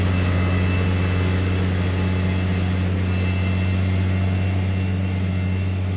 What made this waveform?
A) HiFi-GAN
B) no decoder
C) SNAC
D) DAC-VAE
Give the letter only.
B